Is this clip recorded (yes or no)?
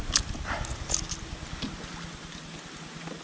yes